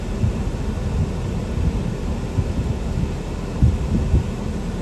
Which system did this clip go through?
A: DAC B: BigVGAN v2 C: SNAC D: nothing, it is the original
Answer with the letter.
D